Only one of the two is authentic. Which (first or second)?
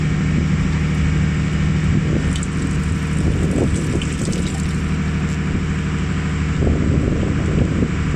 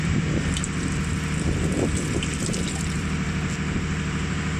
first